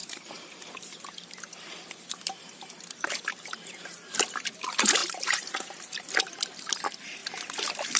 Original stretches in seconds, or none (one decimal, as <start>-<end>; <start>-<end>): 4.5-5.0; 6.1-7.2